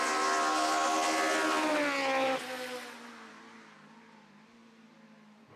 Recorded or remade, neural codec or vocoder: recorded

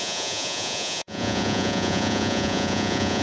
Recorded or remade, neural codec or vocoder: remade, vocoder, Vocos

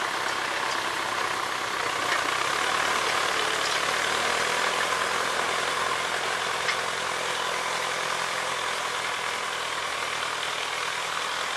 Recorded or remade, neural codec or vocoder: recorded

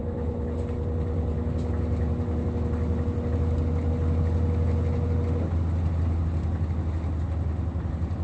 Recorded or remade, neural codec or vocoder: recorded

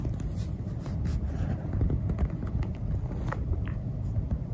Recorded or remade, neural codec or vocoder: recorded